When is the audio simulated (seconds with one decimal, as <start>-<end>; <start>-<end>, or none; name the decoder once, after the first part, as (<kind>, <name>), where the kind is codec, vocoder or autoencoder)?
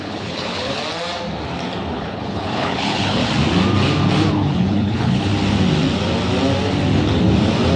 0.0-0.8 (codec, HILCodec); 1.9-3.2; 4.3-5.3